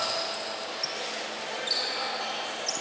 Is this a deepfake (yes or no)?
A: no